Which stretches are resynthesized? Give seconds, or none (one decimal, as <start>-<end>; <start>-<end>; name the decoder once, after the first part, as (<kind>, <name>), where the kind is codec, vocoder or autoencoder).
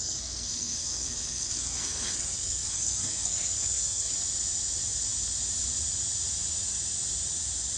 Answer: 0.0-4.1 (codec, SNAC)